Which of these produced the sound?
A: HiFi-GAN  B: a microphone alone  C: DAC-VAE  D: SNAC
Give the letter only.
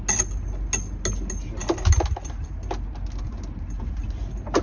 B